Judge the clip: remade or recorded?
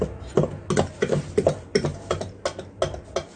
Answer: recorded